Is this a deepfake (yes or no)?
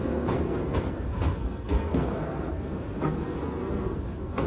yes